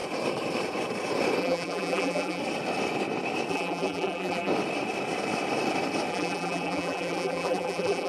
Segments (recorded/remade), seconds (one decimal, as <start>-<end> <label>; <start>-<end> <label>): 0.0-1.4 recorded; 1.4-2.4 remade; 2.4-3.5 recorded; 3.5-4.5 remade; 4.5-6.1 recorded; 6.1-8.1 remade